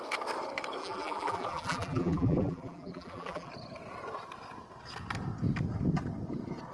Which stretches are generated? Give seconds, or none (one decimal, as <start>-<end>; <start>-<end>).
0.8-3.5